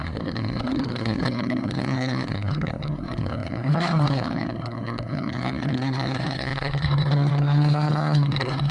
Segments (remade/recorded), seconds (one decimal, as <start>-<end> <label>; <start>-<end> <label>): 0.0-8.7 remade